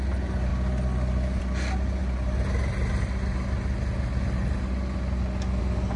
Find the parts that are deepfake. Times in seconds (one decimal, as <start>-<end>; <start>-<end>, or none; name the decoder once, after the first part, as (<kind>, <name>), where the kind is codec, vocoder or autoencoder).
none